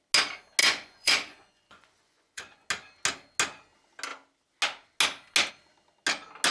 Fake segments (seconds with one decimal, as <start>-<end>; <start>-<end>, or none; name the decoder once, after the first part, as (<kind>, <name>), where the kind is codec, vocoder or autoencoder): 0.6-2.7 (vocoder, Vocos)